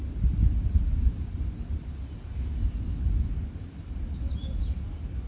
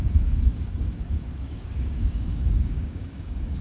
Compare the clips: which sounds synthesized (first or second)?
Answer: second